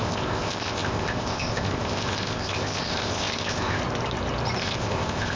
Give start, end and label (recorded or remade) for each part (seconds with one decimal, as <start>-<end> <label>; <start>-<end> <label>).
0.0-3.8 remade; 3.8-4.6 recorded; 4.6-5.4 remade